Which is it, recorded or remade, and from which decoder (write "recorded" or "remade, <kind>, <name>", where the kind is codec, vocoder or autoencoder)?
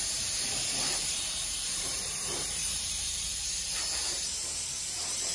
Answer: remade, vocoder, BigVGAN v2